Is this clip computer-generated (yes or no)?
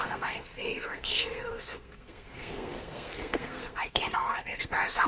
yes